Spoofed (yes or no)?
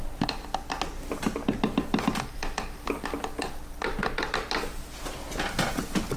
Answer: no